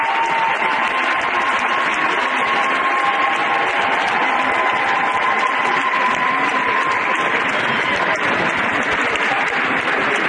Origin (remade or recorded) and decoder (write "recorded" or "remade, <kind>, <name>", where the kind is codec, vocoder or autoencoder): recorded